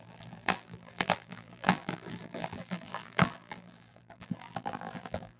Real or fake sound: fake